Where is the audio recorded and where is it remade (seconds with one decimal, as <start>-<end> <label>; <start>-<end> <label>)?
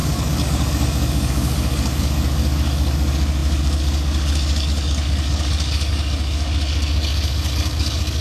0.0-8.2 remade